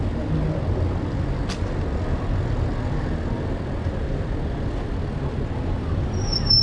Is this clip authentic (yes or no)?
yes